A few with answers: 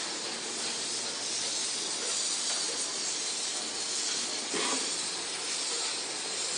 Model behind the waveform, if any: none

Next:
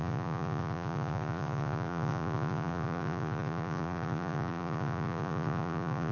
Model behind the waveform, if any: vocoder, Vocos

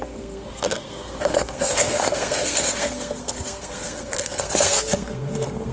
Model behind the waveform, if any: codec, SNAC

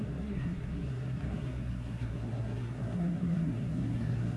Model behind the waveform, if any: codec, SNAC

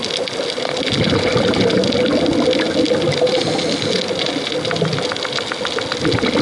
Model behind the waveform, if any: none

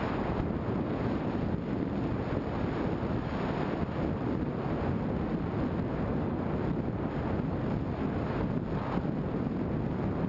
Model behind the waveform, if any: none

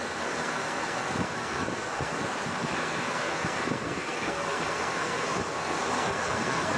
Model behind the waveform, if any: codec, SNAC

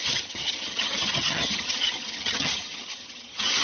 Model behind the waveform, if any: vocoder, HiFi-GAN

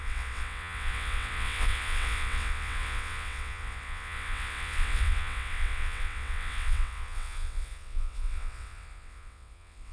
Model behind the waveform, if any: vocoder, WaveNeXt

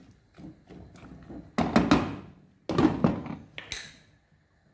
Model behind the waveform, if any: none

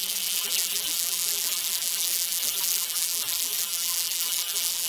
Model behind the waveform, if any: vocoder, BigVGAN v2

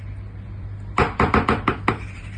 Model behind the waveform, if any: vocoder, BigVGAN v2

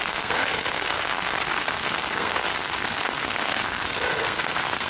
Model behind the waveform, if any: codec, SNAC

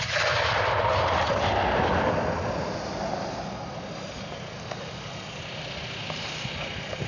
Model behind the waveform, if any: none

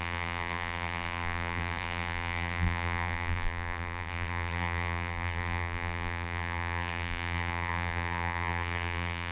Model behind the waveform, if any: vocoder, BigVGAN v2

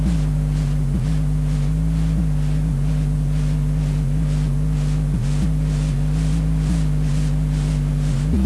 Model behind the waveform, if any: none